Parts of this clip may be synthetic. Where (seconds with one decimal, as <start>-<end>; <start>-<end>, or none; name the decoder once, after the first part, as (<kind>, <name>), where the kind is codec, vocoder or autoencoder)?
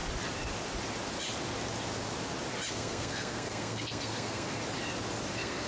2.7-4.6 (codec, SNAC); 5.3-5.7